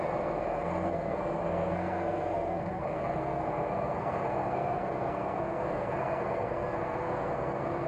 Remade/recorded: remade